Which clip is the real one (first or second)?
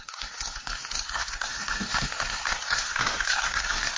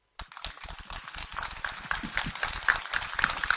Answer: second